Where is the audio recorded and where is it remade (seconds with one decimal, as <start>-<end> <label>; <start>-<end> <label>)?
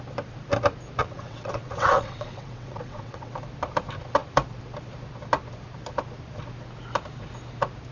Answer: 0.0-1.0 recorded; 1.0-3.3 remade; 3.3-7.9 recorded